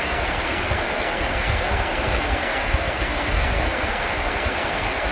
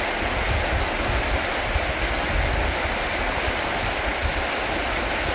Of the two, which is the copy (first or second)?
first